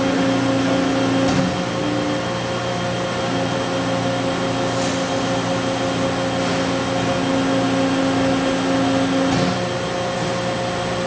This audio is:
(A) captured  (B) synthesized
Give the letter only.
A